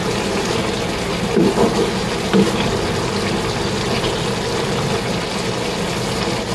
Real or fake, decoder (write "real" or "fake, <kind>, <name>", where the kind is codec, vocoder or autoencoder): real